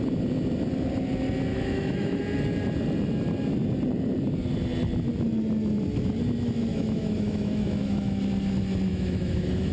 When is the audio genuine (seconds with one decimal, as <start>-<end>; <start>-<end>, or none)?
0.0-1.5; 2.2-6.7; 8.2-8.9

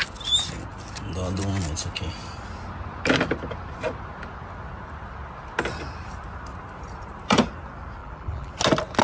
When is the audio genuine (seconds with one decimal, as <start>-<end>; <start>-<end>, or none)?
0.0-8.0; 8.5-9.0

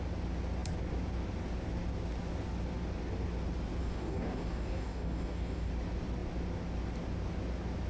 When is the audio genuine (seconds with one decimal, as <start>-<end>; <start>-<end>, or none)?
0.0-3.8; 5.7-7.9

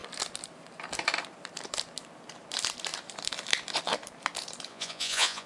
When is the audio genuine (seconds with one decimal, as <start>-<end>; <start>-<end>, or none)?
0.0-4.7

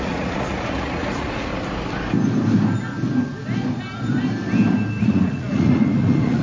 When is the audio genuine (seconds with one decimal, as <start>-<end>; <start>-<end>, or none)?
1.5-5.0

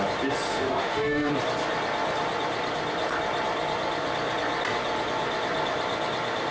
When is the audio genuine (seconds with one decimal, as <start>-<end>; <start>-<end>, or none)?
0.0-0.5; 1.3-6.5

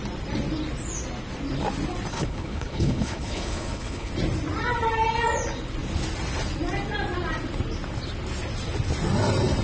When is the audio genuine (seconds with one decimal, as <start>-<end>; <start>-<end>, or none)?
0.0-2.1; 4.1-9.6